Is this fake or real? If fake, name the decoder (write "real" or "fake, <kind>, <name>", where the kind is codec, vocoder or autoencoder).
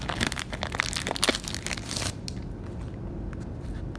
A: real